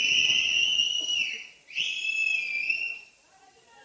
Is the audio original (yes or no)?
no